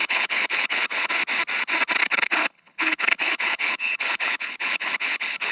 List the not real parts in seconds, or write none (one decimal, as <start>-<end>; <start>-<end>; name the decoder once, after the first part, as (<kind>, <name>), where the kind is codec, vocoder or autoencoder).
0.0-1.1 (codec, HILCodec); 2.0-5.5